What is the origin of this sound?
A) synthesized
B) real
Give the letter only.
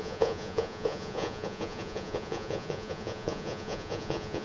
A